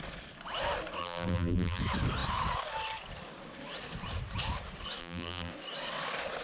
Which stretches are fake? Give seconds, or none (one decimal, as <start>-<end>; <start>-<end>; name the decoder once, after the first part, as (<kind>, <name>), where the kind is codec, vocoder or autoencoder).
1.0-1.8 (vocoder, BigVGAN v2); 5.0-5.5